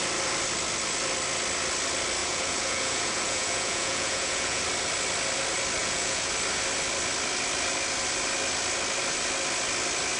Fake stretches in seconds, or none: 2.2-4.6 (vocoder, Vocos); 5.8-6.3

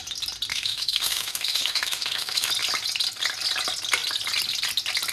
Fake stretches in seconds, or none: 0.5-2.5 (autoencoder, DAC-VAE)

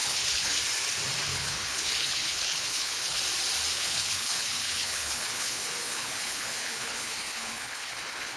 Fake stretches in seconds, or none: 0.0-0.6 (codec, HILCodec); 1.3-3.2; 3.7-8.4

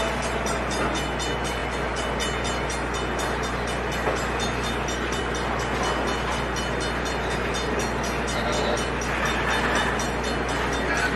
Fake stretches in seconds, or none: none

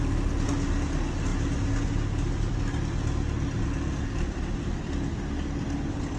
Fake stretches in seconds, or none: none

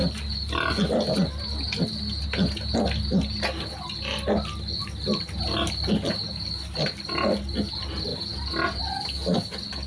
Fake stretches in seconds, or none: none

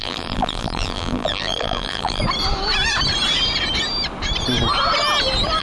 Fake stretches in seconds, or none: 0.0-2.2 (vocoder, BigVGAN v2)